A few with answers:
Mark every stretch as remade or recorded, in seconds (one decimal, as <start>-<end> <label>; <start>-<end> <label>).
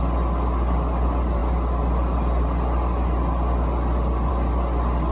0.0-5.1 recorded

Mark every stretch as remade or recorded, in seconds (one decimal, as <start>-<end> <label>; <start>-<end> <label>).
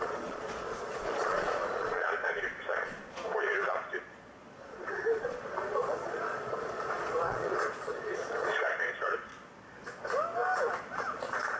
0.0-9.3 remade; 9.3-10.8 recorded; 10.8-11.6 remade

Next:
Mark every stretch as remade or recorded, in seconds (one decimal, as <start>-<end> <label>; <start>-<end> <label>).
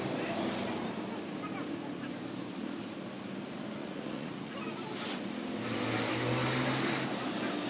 0.0-3.8 recorded; 3.8-4.6 remade; 4.6-7.7 recorded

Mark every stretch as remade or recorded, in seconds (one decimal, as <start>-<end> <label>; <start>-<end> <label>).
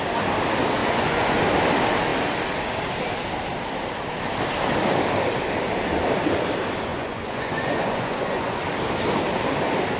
0.0-0.8 recorded; 0.8-1.4 remade; 1.4-6.9 recorded; 6.9-8.6 remade; 8.6-10.0 recorded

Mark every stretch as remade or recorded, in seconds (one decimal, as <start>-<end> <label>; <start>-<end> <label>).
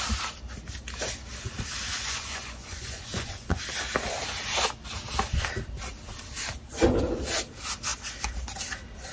0.0-1.9 recorded; 1.9-3.6 remade; 3.6-9.1 recorded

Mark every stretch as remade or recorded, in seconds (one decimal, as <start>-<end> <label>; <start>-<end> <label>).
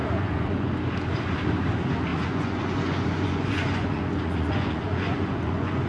0.0-0.7 remade; 0.7-2.1 recorded; 2.1-5.9 remade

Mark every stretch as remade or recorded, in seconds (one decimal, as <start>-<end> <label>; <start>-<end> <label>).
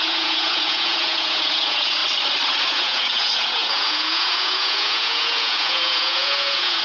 0.0-2.0 remade; 2.0-2.5 recorded; 2.5-6.8 remade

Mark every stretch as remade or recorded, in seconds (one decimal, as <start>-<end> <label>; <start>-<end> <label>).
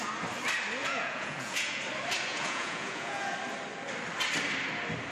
0.0-0.8 recorded; 0.8-1.8 remade; 1.8-2.3 recorded; 2.3-3.3 remade; 3.3-5.1 recorded